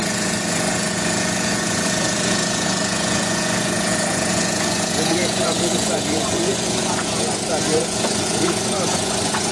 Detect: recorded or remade remade